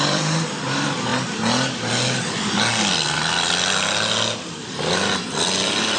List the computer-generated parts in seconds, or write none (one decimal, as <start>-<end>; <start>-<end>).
0.0-1.1; 4.7-6.0